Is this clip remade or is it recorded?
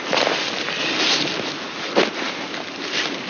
recorded